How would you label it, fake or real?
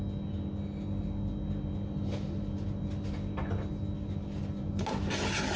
real